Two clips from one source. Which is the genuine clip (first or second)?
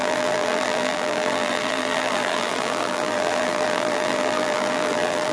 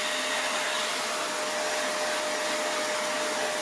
second